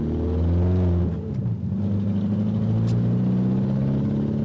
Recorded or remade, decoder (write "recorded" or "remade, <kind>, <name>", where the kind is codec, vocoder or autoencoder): recorded